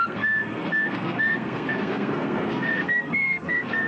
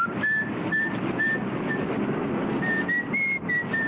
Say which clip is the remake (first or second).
first